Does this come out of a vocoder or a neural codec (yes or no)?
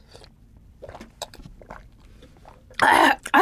yes